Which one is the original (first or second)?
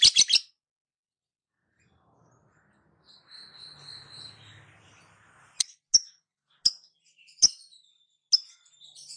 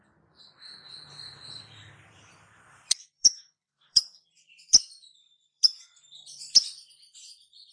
first